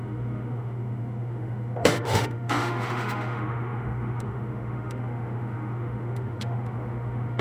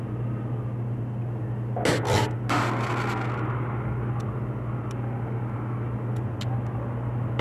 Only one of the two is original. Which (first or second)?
second